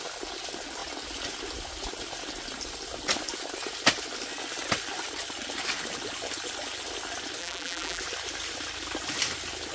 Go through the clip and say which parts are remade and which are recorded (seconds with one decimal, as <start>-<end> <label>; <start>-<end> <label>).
0.0-7.4 recorded; 7.4-8.0 remade; 8.0-9.7 recorded